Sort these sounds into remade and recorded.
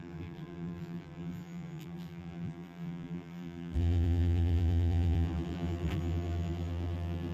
remade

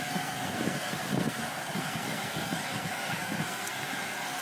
remade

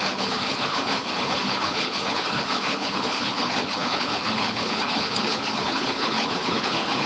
remade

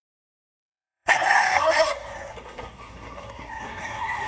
remade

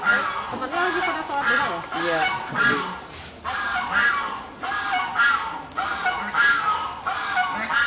recorded